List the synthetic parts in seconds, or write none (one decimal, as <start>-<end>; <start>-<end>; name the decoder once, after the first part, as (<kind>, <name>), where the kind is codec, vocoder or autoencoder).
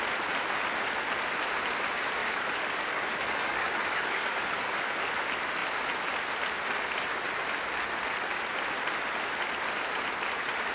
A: 2.2-5.0 (codec, DAC)